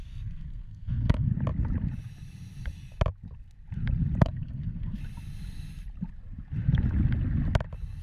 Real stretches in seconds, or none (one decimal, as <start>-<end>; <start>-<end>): 1.3-4.2; 5.0-8.0